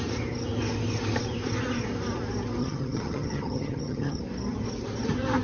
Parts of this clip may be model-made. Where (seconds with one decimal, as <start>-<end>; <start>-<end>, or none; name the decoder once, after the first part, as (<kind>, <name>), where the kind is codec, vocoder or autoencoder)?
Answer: 2.6-4.2 (vocoder, HiFi-GAN)